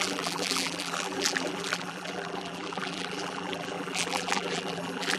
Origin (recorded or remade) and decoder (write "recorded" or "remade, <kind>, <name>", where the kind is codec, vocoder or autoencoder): remade, vocoder, BigVGAN v2